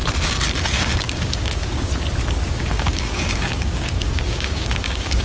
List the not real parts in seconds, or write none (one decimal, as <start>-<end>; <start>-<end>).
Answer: 0.7-1.9; 2.5-5.2